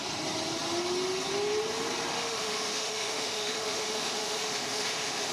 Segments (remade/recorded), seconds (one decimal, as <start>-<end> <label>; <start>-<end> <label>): 0.0-2.1 recorded; 2.1-5.3 remade